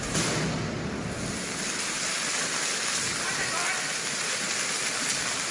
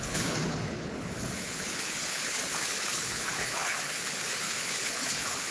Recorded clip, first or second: first